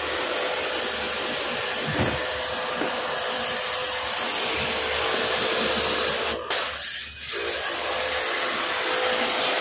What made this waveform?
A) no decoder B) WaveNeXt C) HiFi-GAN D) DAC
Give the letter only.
A